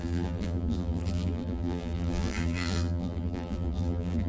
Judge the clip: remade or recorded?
remade